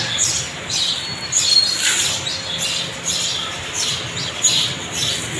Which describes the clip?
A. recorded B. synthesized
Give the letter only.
A